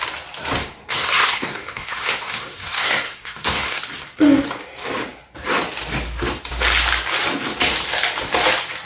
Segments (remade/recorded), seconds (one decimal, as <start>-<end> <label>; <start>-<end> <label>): 0.0-0.6 recorded; 0.6-3.8 remade; 3.8-8.9 recorded